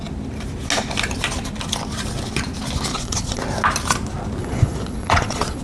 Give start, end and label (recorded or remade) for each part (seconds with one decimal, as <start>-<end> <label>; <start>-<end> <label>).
0.0-2.9 recorded; 2.9-3.4 remade; 3.4-4.4 recorded; 4.4-5.6 remade

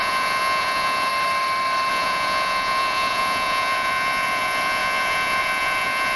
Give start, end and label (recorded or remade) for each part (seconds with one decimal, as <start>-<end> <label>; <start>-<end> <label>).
0.0-1.1 remade; 1.1-1.9 recorded; 1.9-6.2 remade

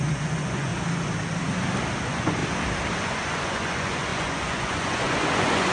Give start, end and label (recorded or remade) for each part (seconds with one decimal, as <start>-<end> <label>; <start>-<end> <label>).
0.0-0.7 remade; 0.7-2.0 recorded; 2.0-2.4 remade; 2.4-3.0 recorded; 3.0-5.7 remade